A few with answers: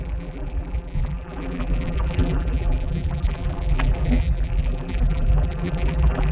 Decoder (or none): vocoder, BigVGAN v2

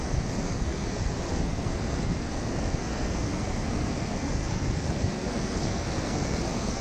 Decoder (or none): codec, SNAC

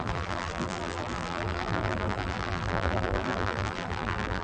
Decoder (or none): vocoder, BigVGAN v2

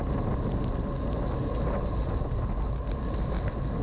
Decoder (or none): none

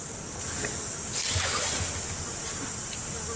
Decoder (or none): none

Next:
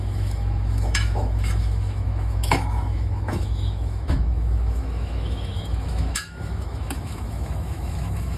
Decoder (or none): autoencoder, DAC-VAE